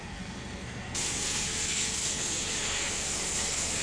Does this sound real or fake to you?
fake